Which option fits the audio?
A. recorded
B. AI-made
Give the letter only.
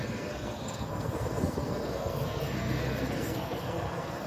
B